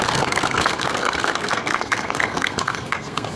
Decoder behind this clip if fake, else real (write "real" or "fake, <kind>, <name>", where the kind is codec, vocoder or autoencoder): fake, codec, SNAC